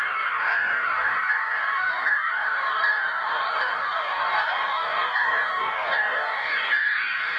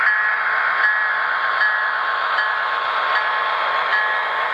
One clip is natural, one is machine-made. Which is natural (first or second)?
second